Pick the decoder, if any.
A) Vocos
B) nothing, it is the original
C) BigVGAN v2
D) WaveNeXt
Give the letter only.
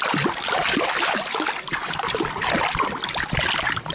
B